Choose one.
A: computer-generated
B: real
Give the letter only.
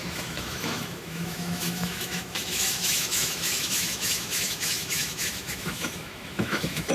A